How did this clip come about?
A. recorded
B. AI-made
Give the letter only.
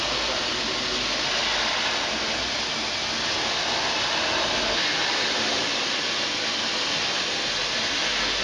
A